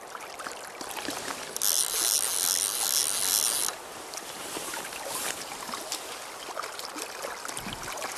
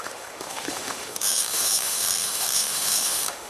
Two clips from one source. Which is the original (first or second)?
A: first